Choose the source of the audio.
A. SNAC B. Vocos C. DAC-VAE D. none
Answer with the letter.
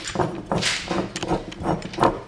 D